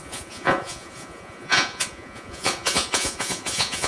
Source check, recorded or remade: remade